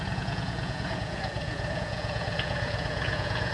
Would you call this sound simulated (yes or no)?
yes